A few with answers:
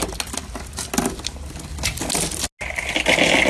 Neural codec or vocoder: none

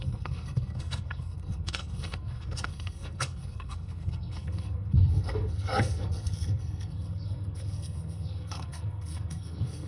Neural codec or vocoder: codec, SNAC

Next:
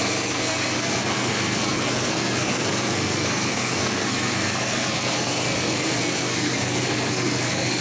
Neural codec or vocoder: codec, SNAC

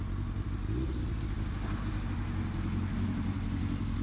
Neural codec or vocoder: none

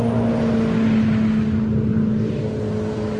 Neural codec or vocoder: none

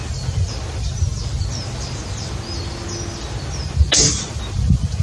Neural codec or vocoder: none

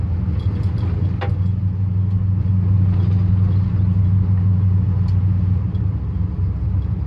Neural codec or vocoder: none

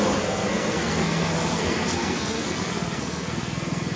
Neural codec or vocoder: codec, SNAC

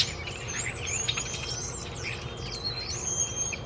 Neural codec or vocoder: none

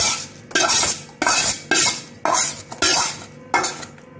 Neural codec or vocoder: none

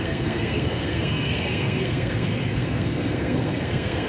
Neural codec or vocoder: codec, SNAC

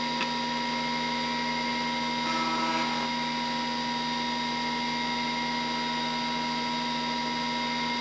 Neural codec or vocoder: none